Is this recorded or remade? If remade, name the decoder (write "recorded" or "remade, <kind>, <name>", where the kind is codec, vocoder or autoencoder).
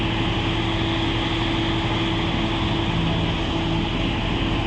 recorded